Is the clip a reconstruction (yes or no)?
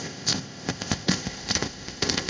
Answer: yes